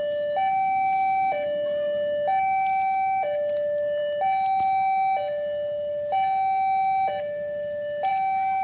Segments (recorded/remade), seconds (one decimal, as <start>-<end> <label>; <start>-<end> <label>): 0.0-8.6 recorded